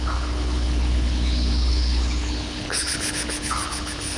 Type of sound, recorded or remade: remade